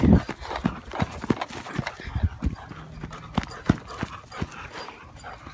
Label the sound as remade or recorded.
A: recorded